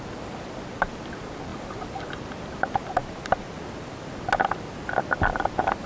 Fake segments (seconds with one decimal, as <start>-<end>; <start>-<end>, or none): none